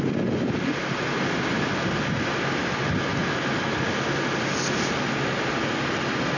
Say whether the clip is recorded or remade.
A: recorded